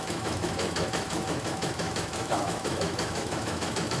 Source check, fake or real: fake